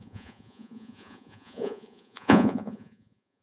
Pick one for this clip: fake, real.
fake